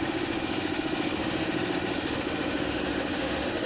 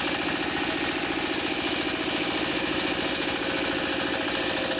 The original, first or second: second